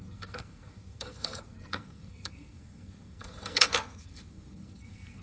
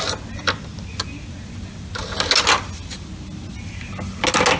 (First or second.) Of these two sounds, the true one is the second